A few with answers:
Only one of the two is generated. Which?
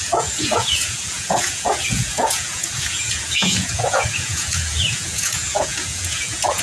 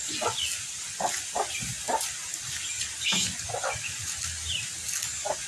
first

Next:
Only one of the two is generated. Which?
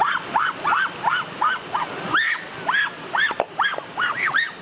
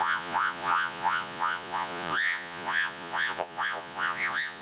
second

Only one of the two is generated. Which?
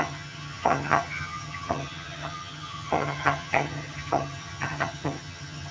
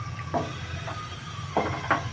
first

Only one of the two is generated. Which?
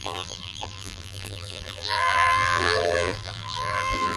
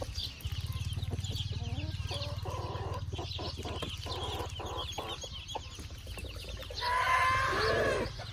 first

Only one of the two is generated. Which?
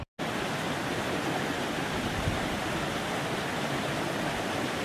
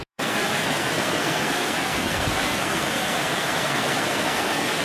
second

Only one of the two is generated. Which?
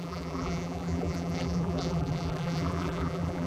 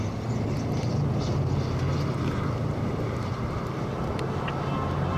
first